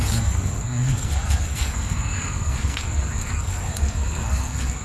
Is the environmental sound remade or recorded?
remade